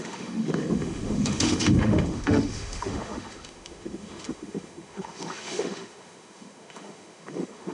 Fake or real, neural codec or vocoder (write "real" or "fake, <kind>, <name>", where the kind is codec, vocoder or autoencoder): fake, autoencoder, DAC-VAE